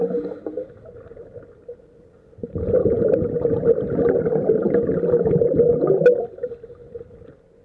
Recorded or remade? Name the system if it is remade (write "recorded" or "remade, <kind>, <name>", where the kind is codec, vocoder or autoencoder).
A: recorded